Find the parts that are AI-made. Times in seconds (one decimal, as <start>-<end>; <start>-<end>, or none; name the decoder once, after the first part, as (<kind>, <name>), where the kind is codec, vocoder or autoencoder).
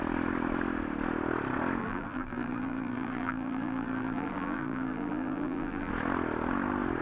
1.8-5.9 (vocoder, BigVGAN v2)